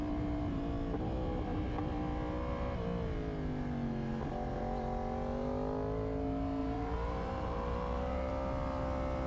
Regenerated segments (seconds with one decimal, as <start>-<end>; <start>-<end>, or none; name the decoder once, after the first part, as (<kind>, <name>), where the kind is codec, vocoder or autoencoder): 6.6-8.3 (vocoder, BigVGAN v2)